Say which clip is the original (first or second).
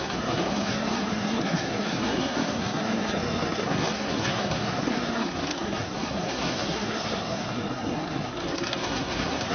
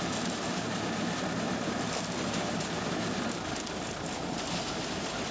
second